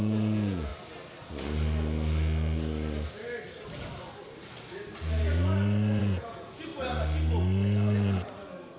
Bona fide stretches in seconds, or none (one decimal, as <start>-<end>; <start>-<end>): 0.7-6.0; 6.7-8.8